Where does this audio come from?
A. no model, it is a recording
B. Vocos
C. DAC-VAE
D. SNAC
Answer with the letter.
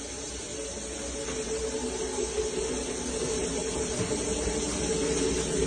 A